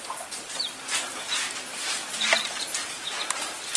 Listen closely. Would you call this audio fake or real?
fake